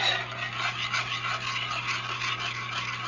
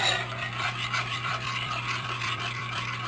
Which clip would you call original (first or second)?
first